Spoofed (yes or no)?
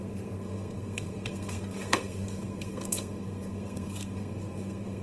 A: yes